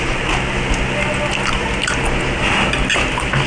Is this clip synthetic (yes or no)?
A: no